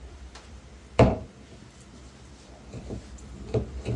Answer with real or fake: fake